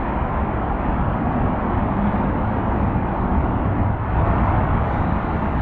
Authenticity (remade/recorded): remade